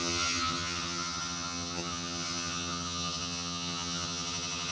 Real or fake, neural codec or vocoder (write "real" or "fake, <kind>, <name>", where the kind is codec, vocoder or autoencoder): fake, vocoder, HiFi-GAN